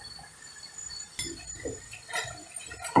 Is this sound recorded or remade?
recorded